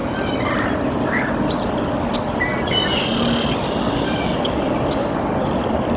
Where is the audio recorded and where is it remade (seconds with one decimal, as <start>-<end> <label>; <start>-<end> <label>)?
0.0-1.3 remade; 1.3-2.5 recorded; 2.5-6.0 remade